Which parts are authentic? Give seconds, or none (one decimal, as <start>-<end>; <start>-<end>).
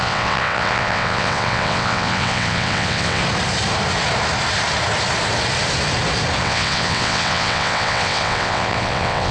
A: 3.2-6.4